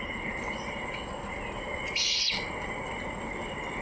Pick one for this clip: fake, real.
real